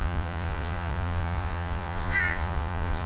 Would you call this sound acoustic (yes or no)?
no